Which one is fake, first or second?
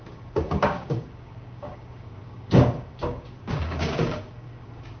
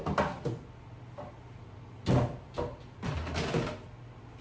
first